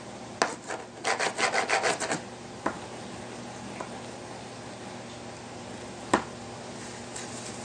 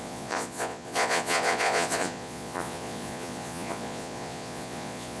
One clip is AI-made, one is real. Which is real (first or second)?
first